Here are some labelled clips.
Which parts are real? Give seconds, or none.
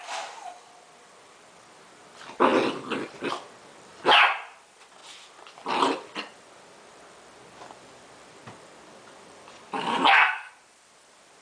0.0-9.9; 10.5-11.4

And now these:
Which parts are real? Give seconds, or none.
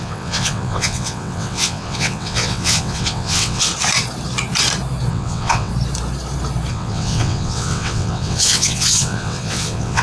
3.7-5.1; 5.7-6.7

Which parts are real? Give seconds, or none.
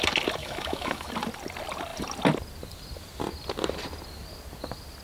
0.0-0.4; 1.1-5.0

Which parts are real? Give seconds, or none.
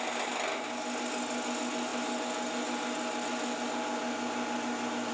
0.0-5.1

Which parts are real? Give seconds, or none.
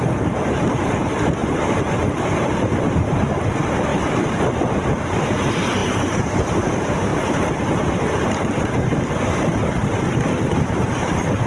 3.9-4.7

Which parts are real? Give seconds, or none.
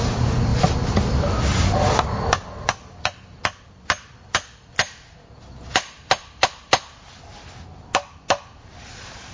0.0-9.3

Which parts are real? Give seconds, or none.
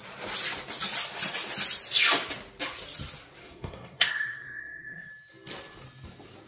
0.0-3.4; 5.1-6.5